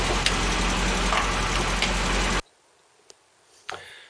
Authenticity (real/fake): real